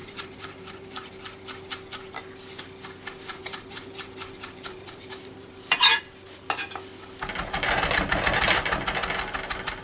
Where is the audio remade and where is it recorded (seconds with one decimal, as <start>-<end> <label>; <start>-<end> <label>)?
0.0-1.1 remade; 1.1-3.4 recorded; 3.4-6.0 remade; 6.0-9.8 recorded